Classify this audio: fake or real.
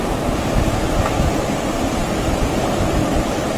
real